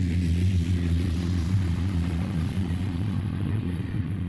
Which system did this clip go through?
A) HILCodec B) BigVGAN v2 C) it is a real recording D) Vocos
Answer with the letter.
D